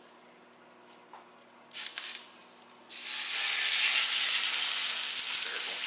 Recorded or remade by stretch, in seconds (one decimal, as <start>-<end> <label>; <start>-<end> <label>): 0.0-5.9 recorded